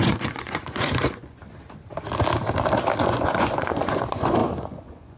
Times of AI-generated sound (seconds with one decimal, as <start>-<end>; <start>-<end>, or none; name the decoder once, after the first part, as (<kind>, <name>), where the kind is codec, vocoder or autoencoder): 0.0-1.4 (vocoder, Vocos); 3.0-5.2